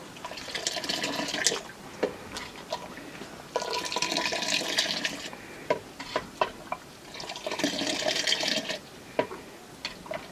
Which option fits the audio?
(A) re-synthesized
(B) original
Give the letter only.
B